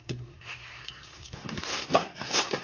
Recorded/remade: remade